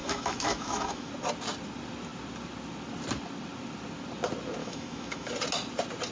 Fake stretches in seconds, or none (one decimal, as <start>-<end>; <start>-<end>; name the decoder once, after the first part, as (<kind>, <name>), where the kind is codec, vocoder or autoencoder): 0.0-1.1 (autoencoder, DAC-VAE); 4.6-5.3